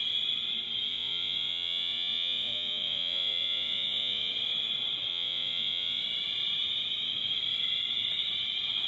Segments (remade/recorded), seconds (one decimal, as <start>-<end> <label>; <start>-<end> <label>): 0.0-0.9 recorded; 0.9-4.3 remade; 4.3-5.1 recorded; 5.1-6.0 remade; 6.0-8.9 recorded